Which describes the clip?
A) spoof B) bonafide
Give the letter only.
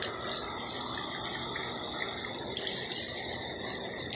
B